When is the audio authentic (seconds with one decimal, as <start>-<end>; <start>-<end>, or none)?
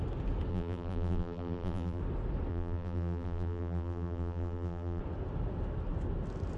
0.0-0.5; 2.0-2.5; 5.0-6.6